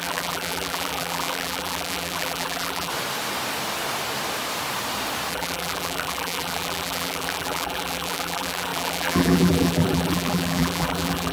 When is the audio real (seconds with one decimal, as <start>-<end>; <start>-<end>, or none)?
2.9-5.3